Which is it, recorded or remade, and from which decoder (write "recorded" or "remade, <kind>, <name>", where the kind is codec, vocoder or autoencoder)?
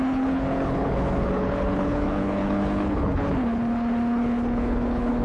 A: remade, codec, HILCodec